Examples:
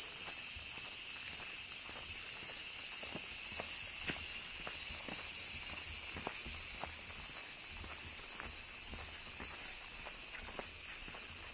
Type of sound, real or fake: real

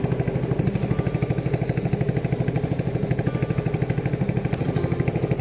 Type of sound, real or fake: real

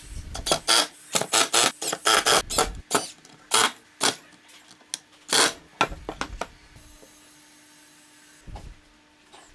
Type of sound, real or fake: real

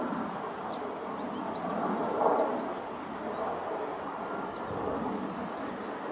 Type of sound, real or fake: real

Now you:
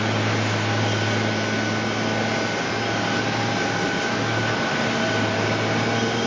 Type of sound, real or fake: real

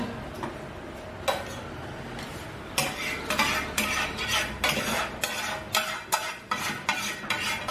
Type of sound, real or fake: real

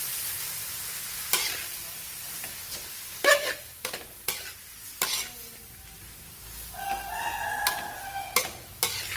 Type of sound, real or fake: real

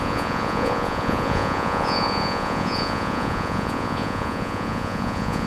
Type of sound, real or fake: fake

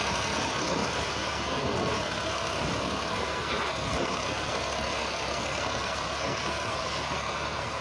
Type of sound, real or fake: fake